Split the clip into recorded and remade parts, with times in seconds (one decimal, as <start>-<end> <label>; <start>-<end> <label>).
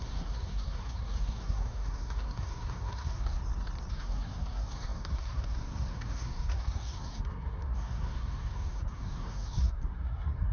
0.0-3.4 remade; 3.4-3.9 recorded; 3.9-10.5 remade